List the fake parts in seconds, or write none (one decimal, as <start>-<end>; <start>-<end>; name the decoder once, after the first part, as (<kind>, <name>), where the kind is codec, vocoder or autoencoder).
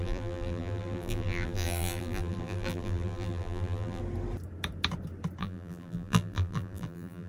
0.0-4.0 (vocoder, BigVGAN v2); 5.4-7.3